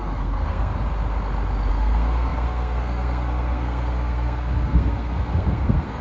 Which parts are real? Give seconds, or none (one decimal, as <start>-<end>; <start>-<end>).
0.7-1.7